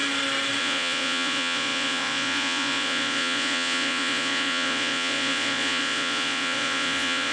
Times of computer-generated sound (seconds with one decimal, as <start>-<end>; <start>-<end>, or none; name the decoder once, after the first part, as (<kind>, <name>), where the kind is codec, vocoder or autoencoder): 0.6-7.3 (vocoder, Vocos)